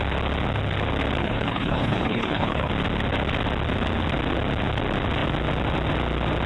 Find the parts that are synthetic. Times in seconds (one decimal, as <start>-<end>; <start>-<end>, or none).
1.2-2.7